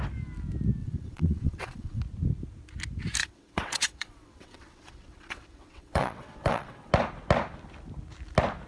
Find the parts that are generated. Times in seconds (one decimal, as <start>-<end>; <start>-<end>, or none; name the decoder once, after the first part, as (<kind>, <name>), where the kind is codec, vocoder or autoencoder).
0.8-2.0 (vocoder, WaveNeXt); 3.2-6.9